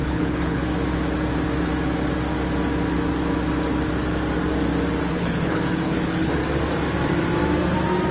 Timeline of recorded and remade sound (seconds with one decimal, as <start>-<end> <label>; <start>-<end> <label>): 0.0-0.6 remade; 0.6-5.1 recorded; 5.1-6.4 remade; 6.4-8.1 recorded